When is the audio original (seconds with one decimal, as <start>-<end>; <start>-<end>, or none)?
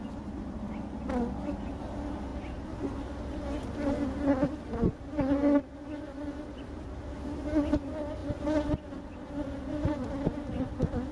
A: 0.0-11.1